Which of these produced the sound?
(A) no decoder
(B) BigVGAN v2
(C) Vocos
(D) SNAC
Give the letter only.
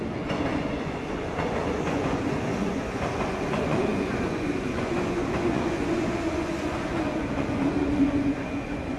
C